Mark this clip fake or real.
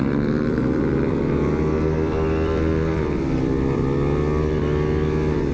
fake